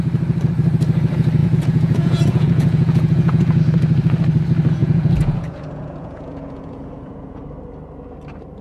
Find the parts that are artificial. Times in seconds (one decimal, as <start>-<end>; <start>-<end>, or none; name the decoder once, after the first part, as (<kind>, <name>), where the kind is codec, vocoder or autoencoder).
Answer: 1.4-3.6 (vocoder, Vocos); 4.8-7.4